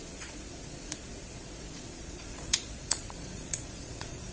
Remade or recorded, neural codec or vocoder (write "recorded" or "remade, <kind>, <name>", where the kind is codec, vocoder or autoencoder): remade, vocoder, Vocos